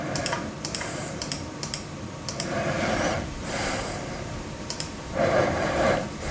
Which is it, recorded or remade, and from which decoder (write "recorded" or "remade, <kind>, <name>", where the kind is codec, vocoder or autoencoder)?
remade, vocoder, BigVGAN v2